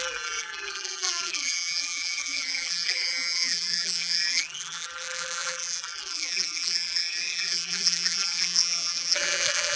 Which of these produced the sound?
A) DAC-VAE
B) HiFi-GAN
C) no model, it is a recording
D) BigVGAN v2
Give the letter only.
D